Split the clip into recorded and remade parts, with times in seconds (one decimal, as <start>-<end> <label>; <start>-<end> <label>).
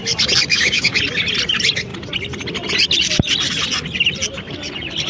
0.0-0.5 recorded; 0.5-1.0 remade; 1.0-5.1 recorded